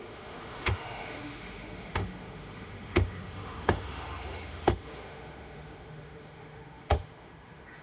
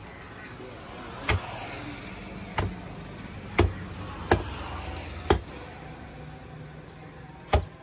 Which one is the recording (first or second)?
second